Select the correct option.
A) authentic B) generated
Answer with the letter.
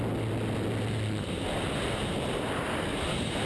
A